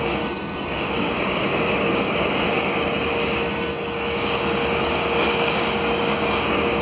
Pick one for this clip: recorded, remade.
remade